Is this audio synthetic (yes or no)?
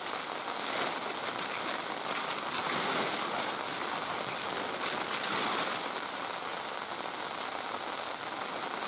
no